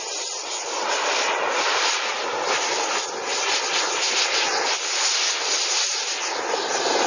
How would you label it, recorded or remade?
recorded